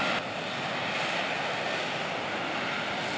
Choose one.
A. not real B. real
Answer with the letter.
B